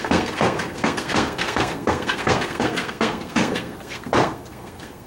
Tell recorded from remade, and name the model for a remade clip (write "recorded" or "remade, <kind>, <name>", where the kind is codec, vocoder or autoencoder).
remade, codec, SNAC